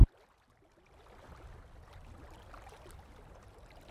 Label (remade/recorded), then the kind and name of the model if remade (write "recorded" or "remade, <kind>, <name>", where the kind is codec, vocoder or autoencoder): recorded